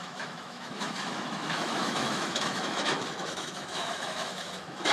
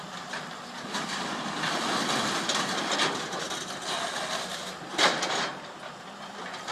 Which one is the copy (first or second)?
first